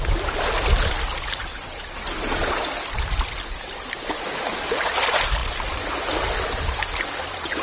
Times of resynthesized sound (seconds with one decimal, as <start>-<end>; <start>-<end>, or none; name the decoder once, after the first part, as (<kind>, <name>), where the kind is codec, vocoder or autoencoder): 1.5-2.5 (vocoder, Vocos)